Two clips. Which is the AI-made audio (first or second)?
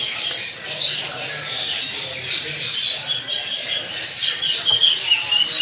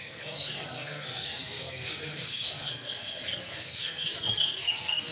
second